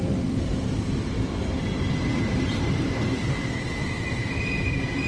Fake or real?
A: fake